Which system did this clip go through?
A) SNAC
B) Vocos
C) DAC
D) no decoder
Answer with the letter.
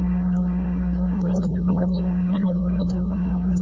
A